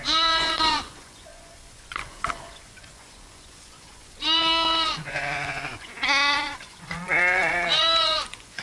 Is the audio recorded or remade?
remade